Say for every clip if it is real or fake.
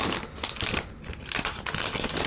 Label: real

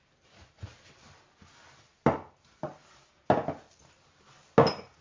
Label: real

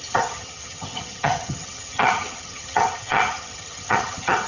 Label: fake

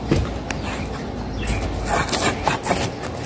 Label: real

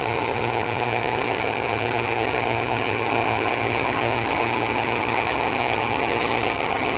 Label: fake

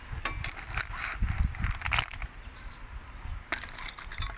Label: real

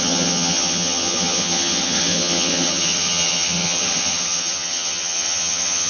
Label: fake